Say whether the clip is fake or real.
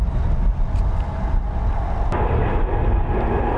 real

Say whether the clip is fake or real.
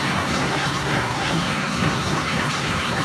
fake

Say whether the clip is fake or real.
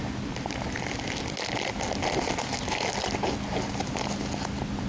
real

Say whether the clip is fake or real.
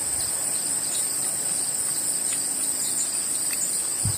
real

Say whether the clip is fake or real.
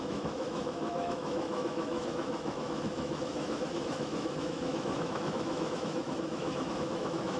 fake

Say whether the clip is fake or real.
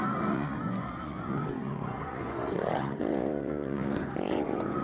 fake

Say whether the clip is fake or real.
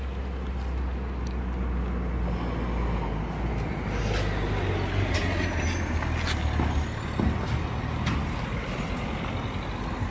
real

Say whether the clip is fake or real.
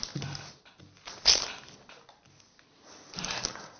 real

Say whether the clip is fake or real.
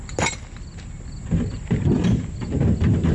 real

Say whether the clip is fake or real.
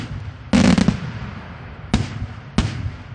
real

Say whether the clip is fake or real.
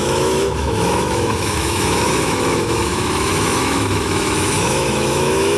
fake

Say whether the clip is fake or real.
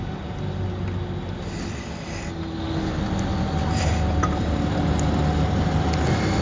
real